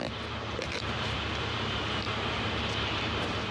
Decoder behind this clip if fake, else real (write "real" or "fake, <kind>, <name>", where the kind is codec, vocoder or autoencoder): fake, vocoder, BigVGAN v2